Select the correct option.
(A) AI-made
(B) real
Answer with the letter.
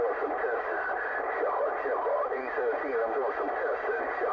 B